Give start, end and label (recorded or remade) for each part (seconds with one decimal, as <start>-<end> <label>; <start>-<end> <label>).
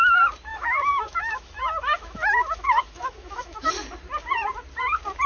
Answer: 0.0-0.5 recorded; 0.5-3.7 remade; 3.7-5.3 recorded